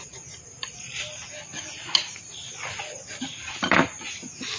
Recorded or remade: recorded